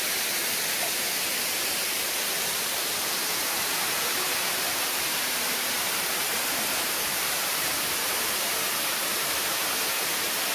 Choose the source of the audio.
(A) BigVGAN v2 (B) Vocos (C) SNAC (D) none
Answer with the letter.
A